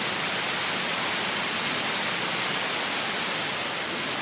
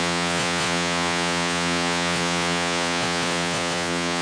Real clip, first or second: first